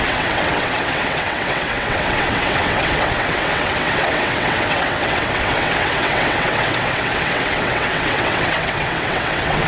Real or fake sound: fake